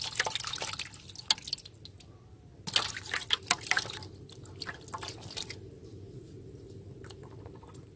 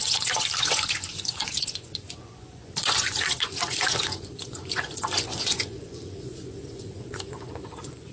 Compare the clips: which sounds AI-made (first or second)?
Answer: second